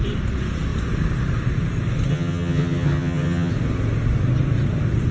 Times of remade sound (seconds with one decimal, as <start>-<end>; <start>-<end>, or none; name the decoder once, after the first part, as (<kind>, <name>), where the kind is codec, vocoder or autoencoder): 2.1-3.5 (vocoder, HiFi-GAN)